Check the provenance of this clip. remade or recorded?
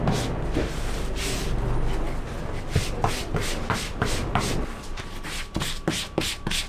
recorded